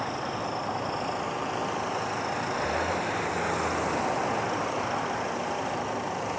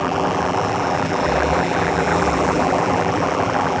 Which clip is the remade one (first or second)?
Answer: second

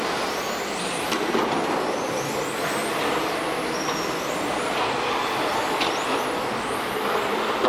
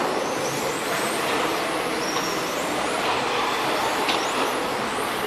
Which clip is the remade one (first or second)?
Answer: second